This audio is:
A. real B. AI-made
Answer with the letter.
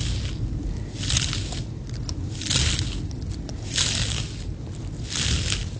A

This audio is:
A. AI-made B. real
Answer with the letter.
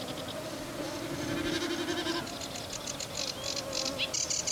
B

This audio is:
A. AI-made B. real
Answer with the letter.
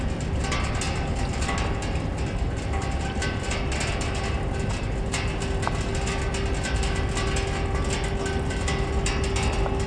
B